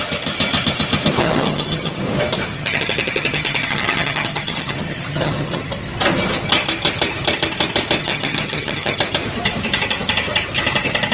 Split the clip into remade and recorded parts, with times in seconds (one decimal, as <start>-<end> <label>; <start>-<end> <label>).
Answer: 0.0-1.2 recorded; 1.2-2.0 remade; 2.0-2.5 recorded; 2.5-5.7 remade; 5.7-8.0 recorded; 8.0-9.0 remade; 9.0-11.1 recorded